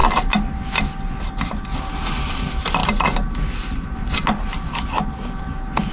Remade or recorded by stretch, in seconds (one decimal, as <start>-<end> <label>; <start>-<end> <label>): 0.0-5.9 recorded